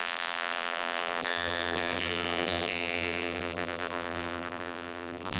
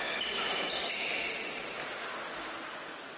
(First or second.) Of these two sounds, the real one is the second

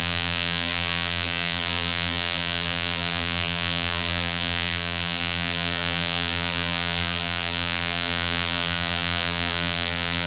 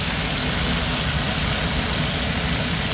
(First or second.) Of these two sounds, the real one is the second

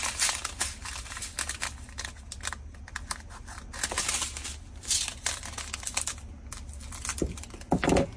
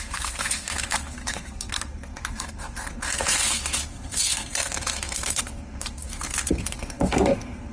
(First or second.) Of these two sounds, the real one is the first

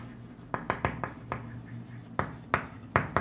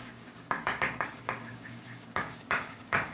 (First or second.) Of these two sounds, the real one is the first